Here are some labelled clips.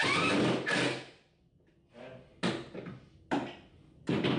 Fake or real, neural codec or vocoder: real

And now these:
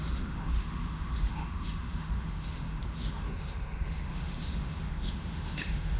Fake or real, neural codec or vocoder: fake, autoencoder, DAC-VAE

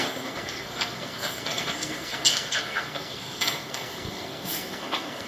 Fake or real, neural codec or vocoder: fake, codec, SNAC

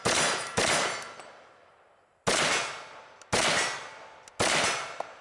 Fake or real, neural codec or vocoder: real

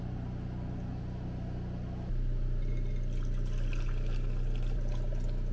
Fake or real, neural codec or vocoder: real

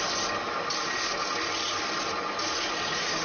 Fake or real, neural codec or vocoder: real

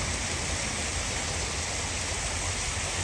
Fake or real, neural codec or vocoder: real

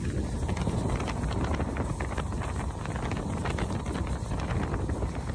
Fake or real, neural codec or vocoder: real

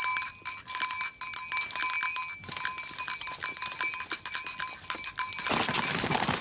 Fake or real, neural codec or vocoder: real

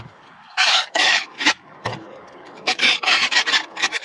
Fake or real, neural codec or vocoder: fake, codec, DAC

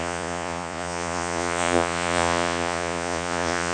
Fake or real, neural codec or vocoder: fake, vocoder, Vocos